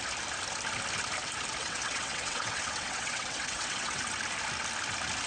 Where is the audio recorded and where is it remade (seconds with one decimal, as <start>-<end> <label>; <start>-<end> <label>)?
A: 0.0-1.6 recorded; 1.6-4.0 remade; 4.0-5.3 recorded